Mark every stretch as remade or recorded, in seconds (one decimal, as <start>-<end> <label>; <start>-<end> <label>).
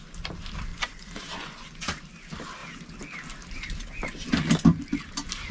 0.0-0.7 recorded; 0.7-1.8 remade; 1.8-5.5 recorded